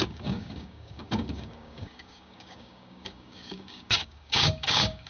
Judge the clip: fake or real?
fake